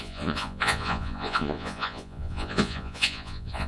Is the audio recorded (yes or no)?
no